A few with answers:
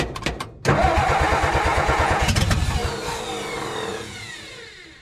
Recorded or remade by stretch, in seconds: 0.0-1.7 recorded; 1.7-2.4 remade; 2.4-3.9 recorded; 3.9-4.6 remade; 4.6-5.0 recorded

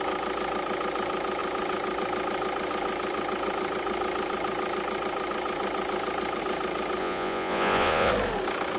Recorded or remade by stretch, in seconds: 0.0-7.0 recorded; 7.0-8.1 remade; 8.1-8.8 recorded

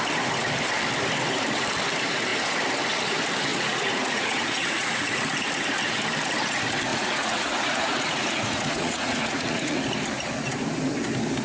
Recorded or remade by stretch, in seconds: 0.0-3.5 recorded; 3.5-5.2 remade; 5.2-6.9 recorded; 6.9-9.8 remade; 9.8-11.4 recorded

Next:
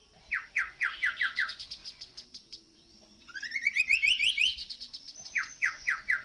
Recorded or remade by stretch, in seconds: 0.0-0.5 recorded; 0.5-6.2 remade

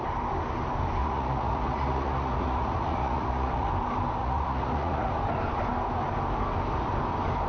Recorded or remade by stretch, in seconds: 0.0-1.0 recorded; 1.0-3.7 remade; 3.7-4.2 recorded; 4.2-5.1 remade; 5.1-7.5 recorded